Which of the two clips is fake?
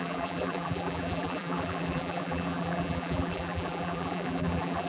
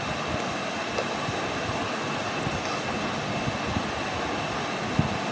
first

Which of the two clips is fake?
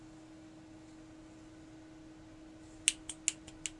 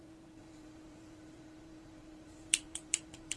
second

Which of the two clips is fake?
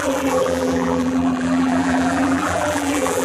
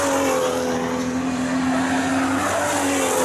first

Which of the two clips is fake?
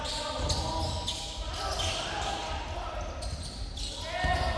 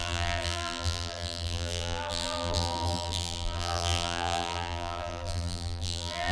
second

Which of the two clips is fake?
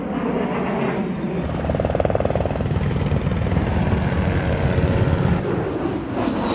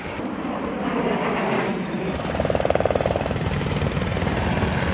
second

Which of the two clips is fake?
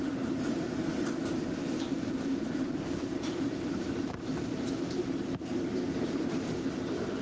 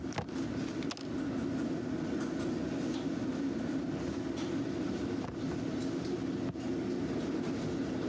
first